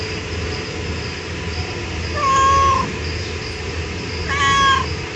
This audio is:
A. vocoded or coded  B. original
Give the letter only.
B